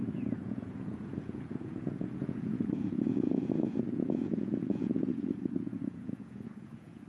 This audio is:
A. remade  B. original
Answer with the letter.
A